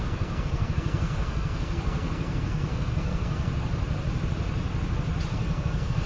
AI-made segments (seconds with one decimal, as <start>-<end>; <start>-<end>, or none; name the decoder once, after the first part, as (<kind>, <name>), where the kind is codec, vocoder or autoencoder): 0.0-3.5 (codec, SNAC); 5.3-6.1